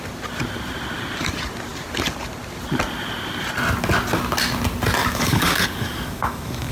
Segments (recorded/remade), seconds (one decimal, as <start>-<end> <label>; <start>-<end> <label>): 0.0-5.0 recorded; 5.0-6.7 remade